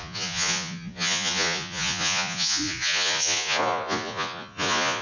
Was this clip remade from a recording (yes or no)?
yes